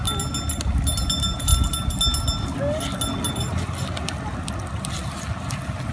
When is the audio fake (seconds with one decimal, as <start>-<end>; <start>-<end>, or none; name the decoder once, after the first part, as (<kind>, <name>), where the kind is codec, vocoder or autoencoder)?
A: none